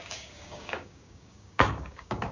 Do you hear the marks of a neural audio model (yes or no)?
yes